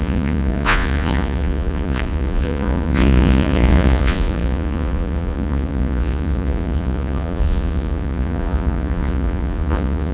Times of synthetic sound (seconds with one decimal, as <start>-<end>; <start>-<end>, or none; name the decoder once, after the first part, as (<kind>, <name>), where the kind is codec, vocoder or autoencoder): 0.0-10.1 (vocoder, Vocos)